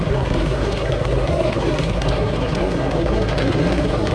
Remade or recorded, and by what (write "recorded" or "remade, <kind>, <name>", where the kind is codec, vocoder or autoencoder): remade, codec, SNAC